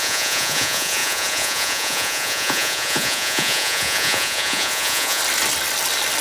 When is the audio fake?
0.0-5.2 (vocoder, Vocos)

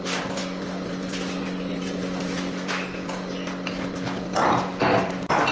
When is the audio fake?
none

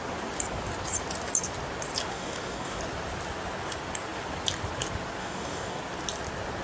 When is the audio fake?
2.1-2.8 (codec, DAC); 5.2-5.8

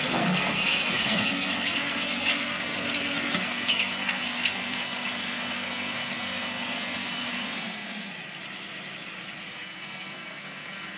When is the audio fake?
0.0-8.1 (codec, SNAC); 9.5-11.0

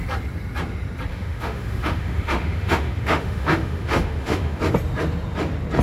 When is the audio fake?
1.1-4.6 (autoencoder, DAC-VAE)

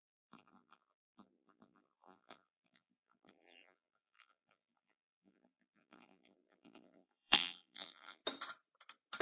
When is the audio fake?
0.0-8.2 (vocoder, BigVGAN v2)

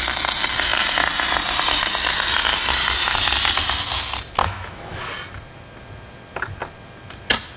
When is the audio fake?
4.4-5.1 (autoencoder, DAC-VAE)

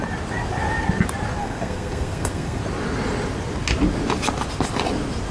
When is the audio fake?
1.4-2.6 (codec, SNAC)